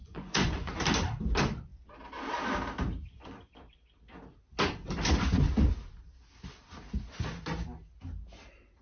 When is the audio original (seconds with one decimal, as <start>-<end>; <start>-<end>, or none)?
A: 0.7-8.8